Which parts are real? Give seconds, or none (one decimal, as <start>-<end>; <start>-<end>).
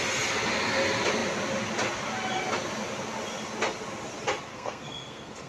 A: 0.0-4.5